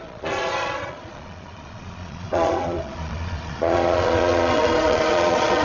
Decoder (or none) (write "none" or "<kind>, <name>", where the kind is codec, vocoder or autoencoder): vocoder, Vocos